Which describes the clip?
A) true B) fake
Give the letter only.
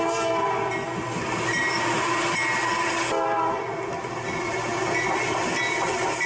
A